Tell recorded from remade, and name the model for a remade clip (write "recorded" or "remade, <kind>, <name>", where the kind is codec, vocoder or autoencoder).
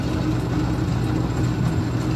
recorded